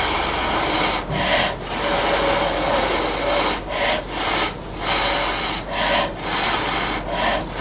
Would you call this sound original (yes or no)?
yes